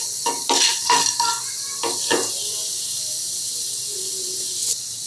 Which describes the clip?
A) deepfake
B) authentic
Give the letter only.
B